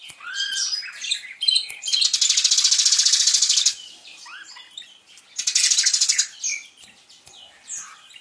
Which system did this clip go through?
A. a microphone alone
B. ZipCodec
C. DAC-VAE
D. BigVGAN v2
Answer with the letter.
A